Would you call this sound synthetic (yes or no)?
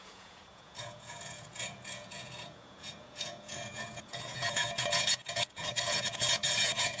yes